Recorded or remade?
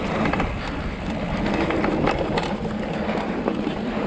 recorded